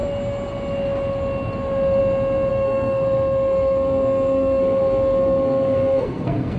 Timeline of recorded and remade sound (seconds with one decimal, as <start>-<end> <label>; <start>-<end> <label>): 0.0-2.5 recorded; 2.5-6.6 remade